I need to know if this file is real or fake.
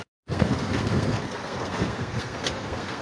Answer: fake